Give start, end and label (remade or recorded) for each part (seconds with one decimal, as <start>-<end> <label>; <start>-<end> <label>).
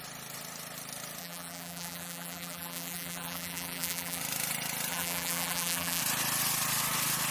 0.0-1.2 recorded; 1.2-4.2 remade; 4.2-4.9 recorded; 4.9-6.0 remade; 6.0-7.3 recorded